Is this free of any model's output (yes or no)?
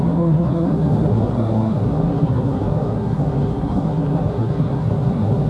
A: no